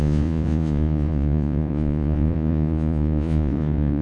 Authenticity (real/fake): fake